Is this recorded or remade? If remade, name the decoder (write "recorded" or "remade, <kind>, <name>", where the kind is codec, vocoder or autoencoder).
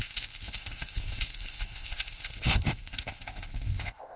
remade, codec, ZipCodec